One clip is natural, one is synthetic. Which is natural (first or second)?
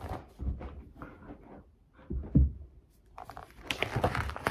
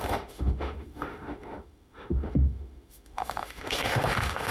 first